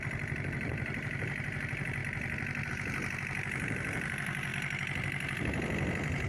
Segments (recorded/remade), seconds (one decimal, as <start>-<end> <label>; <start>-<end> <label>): 0.0-2.0 remade; 2.0-2.7 recorded; 2.7-4.5 remade; 4.5-6.3 recorded